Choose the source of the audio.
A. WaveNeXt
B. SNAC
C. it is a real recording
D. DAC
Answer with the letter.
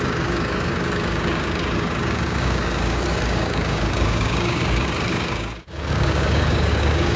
D